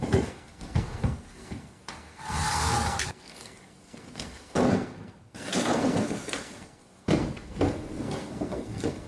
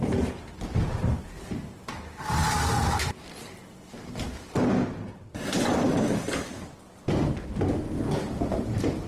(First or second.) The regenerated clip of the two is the first